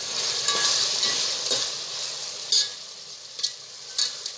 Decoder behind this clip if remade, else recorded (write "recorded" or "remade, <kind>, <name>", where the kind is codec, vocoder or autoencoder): recorded